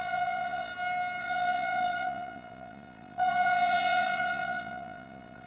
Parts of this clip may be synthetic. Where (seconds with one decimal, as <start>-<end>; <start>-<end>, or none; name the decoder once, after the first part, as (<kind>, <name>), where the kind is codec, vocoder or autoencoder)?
0.0-0.7 (vocoder, Vocos); 1.2-5.5

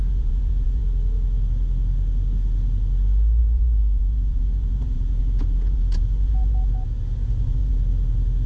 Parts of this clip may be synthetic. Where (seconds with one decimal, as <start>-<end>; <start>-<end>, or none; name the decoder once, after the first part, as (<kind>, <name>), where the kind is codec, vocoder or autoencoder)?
0.0-0.8 (vocoder, Vocos); 3.4-7.7

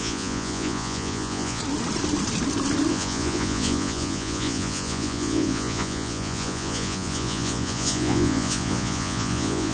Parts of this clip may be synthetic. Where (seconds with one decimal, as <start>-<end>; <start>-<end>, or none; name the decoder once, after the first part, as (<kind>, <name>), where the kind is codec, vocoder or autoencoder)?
0.0-1.6 (vocoder, Vocos); 2.9-9.7

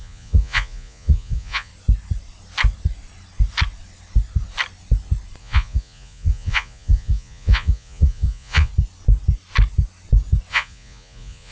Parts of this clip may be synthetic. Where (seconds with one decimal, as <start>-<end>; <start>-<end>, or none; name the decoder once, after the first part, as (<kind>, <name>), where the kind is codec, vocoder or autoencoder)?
0.0-1.7 (vocoder, Vocos); 5.4-8.7; 10.5-11.5